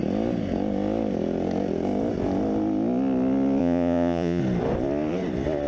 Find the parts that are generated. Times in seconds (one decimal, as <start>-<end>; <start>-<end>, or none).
3.6-4.4